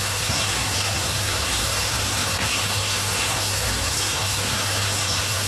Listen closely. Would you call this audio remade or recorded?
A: remade